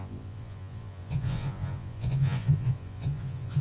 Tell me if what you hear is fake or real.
fake